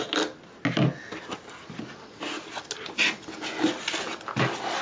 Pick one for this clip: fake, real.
real